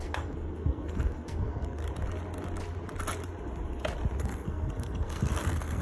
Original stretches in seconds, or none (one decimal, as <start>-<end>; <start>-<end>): 1.8-4.2